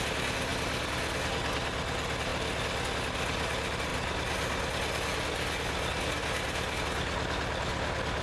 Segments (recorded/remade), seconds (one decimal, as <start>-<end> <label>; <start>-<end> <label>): 0.0-8.2 recorded